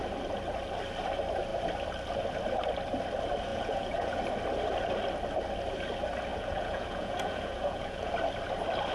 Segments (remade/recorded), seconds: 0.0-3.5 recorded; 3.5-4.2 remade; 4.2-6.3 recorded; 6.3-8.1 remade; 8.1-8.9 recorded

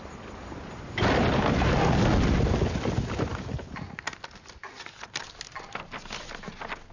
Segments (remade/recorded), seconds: 0.0-6.9 recorded

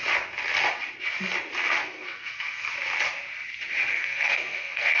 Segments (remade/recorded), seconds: 0.0-1.8 recorded; 1.8-2.7 remade; 2.7-3.9 recorded; 3.9-5.0 remade

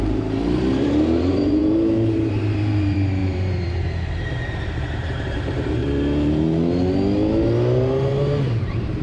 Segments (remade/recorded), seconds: 0.0-5.8 remade; 5.8-8.6 recorded; 8.6-9.0 remade